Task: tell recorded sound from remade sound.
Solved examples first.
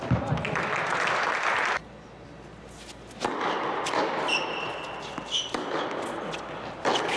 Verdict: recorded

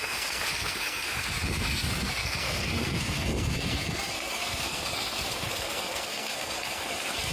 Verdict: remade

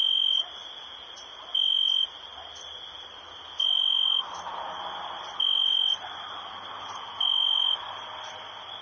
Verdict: recorded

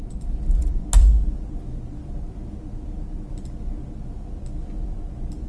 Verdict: recorded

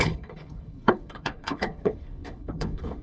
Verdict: remade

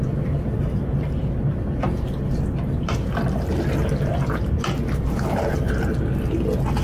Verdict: recorded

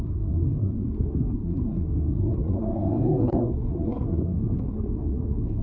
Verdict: remade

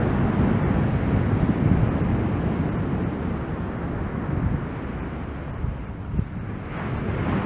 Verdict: recorded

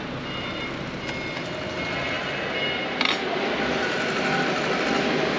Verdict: recorded